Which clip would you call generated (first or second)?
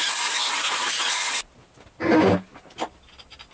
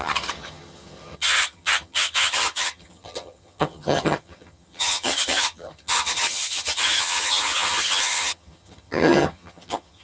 second